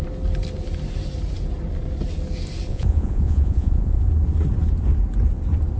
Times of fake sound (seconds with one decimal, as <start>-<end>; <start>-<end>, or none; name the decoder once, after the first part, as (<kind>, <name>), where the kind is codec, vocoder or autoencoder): 2.7-4.1 (vocoder, Vocos)